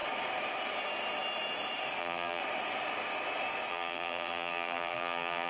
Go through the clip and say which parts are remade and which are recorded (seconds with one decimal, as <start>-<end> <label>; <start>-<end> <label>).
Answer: 0.0-2.0 recorded; 2.0-2.4 remade; 2.4-3.7 recorded; 3.7-5.5 remade

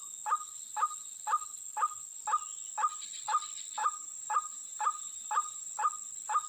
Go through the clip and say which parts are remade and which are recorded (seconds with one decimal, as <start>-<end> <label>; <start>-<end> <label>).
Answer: 0.0-3.8 recorded; 3.8-5.7 remade; 5.7-6.5 recorded